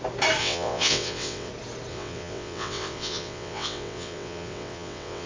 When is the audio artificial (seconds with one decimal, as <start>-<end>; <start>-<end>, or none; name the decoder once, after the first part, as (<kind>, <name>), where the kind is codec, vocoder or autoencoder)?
0.4-1.5 (vocoder, WaveNeXt); 1.9-5.3

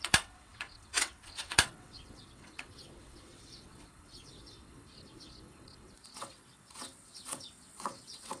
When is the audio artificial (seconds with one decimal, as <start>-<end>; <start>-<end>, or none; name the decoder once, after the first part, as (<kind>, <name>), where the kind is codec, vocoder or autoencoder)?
0.0-8.4 (vocoder, WaveNeXt)